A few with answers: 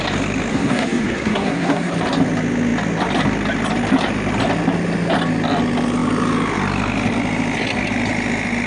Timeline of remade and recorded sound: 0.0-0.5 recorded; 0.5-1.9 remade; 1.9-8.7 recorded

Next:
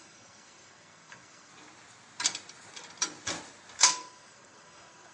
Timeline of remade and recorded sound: 0.0-1.5 remade; 1.5-3.8 recorded; 3.8-5.1 remade

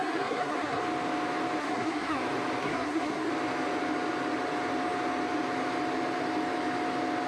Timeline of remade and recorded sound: 0.0-0.8 remade; 0.8-1.6 recorded; 1.6-2.2 remade; 2.2-2.6 recorded; 2.6-3.3 remade; 3.3-7.3 recorded

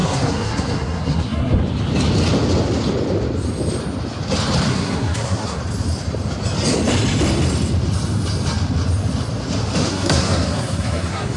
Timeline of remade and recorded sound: 0.0-1.6 remade; 1.6-4.7 recorded; 4.7-5.6 remade; 5.6-9.8 recorded; 9.8-11.4 remade

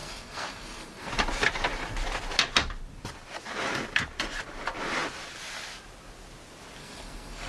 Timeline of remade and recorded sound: 0.0-1.1 remade; 1.1-6.8 recorded; 6.8-7.5 remade

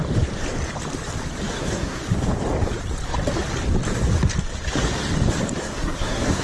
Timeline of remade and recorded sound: 0.0-1.5 recorded; 1.5-2.0 remade; 2.0-5.6 recorded; 5.6-6.4 remade

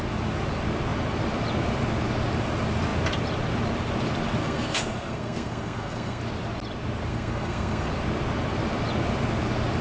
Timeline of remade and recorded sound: 0.0-4.4 recorded; 4.4-6.2 remade; 6.2-7.1 recorded; 7.1-7.9 remade; 7.9-9.8 recorded

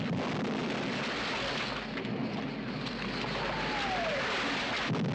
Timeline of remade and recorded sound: 0.0-5.1 recorded